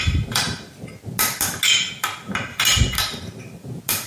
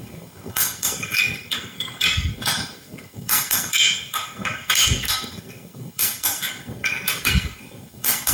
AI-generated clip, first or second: second